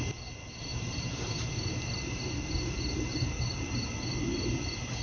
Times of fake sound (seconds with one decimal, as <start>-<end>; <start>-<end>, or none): 0.7-3.7